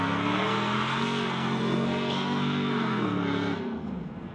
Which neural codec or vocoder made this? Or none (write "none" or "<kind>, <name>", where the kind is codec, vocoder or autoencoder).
codec, SNAC